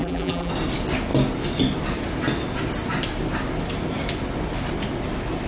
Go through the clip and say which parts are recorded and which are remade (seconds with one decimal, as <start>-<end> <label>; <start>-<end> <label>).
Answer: 0.0-0.5 remade; 0.5-5.5 recorded